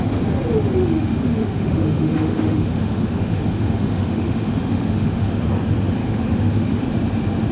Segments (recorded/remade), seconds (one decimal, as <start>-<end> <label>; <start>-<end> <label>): 0.0-0.8 recorded; 0.8-5.3 remade; 5.3-6.0 recorded; 6.0-6.8 remade; 6.8-7.5 recorded